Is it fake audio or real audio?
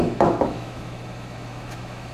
fake